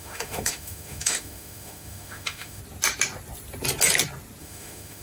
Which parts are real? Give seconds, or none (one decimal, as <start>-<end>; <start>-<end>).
2.6-4.4